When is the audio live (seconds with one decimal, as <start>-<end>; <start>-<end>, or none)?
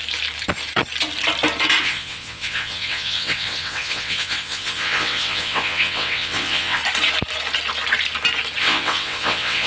0.0-1.8; 6.8-8.6